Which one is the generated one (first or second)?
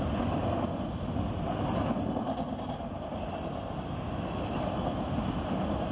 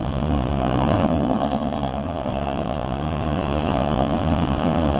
second